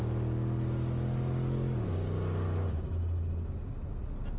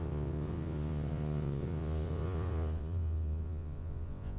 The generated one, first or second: second